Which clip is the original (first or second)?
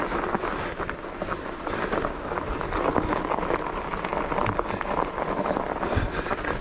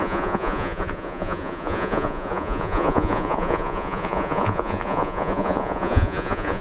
first